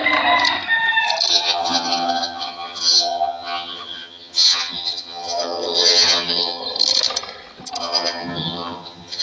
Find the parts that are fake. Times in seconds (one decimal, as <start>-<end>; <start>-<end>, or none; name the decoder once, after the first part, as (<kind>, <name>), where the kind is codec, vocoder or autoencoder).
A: 1.3-6.6 (vocoder, HiFi-GAN); 7.8-9.2